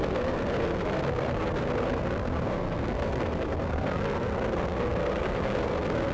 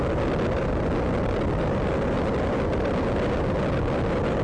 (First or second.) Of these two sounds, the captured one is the second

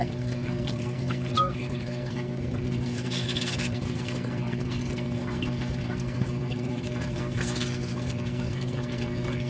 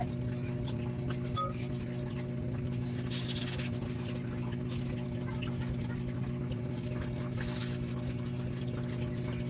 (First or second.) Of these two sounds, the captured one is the second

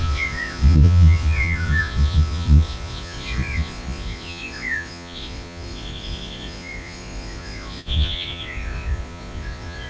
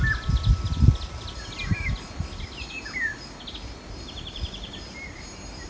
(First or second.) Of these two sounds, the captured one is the second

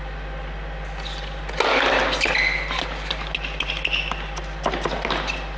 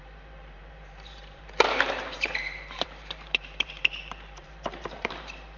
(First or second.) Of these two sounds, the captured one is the first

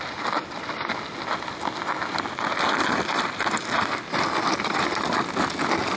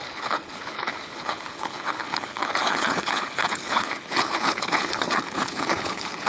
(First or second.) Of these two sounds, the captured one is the first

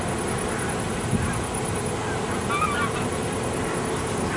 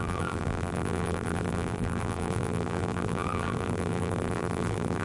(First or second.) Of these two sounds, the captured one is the first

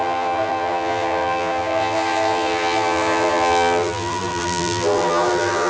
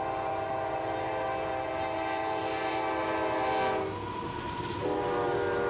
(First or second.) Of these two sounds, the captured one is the second